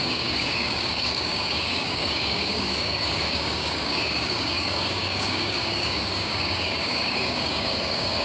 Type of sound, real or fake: fake